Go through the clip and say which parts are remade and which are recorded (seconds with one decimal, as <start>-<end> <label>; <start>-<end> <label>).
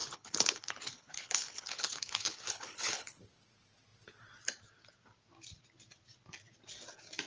0.0-3.2 remade; 3.2-7.3 recorded